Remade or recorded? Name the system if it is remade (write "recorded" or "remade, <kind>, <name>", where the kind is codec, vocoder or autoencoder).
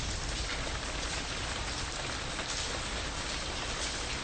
recorded